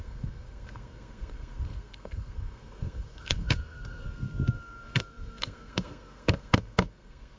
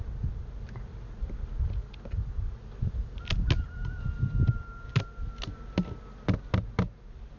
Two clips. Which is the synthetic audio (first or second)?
first